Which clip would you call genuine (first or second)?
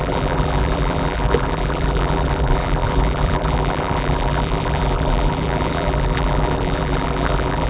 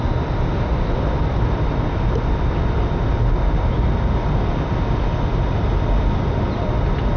second